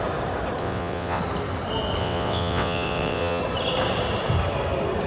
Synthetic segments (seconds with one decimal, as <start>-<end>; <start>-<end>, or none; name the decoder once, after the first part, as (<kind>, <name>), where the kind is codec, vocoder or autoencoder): 0.6-1.2 (vocoder, WaveNeXt); 2.0-3.4